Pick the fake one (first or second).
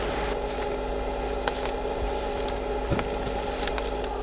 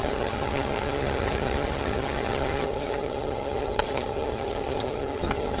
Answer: second